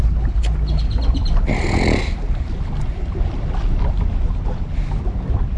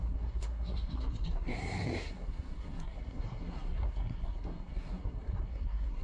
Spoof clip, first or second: second